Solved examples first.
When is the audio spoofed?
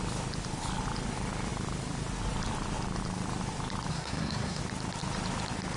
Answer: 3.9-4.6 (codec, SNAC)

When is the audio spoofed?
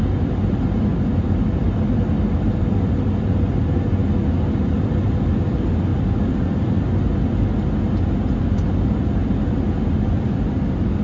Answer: none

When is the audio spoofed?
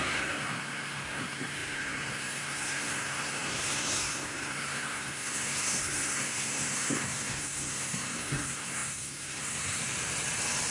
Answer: 0.0-9.8 (codec, SNAC)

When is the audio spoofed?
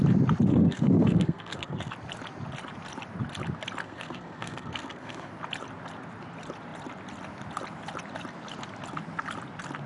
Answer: 0.5-1.9 (codec, SNAC); 3.8-5.3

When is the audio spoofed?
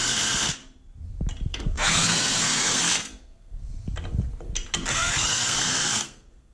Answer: 0.0-0.6 (codec, SNAC); 1.5-3.7; 4.9-6.5